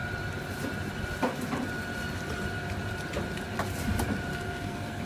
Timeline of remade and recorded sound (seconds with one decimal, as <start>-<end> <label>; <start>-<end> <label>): 0.0-4.3 recorded; 4.3-5.1 remade